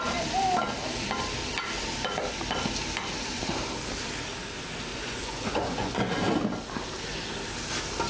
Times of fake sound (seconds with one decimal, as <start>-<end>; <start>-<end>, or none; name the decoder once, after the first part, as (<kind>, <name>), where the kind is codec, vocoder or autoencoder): 4.9-6.1 (vocoder, Vocos)